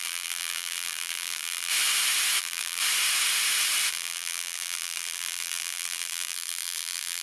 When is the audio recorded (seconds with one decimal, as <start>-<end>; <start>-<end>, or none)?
1.7-2.4; 2.8-3.9